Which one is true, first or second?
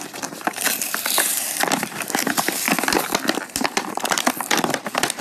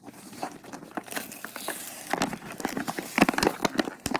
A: second